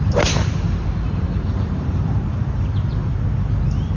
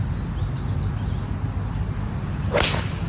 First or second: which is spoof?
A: first